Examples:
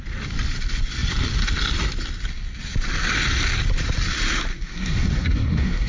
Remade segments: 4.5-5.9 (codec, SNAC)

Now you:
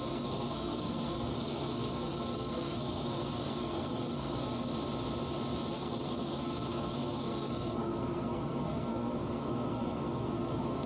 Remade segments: 0.0-4.7 (codec, SNAC); 5.7-10.9

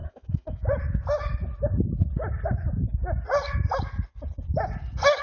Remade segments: 0.0-0.8 (autoencoder, DAC-VAE)

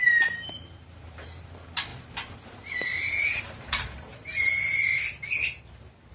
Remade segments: 0.0-4.9 (vocoder, BigVGAN v2)

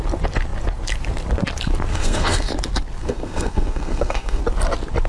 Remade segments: 1.9-2.5 (codec, SNAC); 3.0-4.4

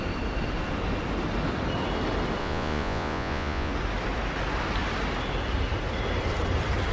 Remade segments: 2.4-3.7 (vocoder, Vocos)